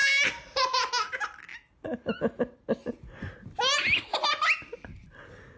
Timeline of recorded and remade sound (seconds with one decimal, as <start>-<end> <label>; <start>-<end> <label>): 0.0-5.6 recorded